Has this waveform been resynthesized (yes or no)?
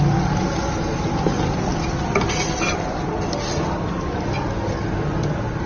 no